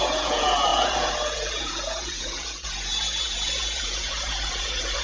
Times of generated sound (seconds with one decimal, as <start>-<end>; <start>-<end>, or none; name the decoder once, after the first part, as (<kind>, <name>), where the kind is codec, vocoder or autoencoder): 0.0-5.0 (vocoder, Vocos)